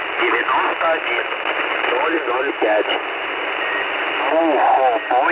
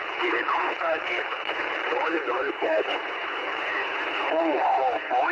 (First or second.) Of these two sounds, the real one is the first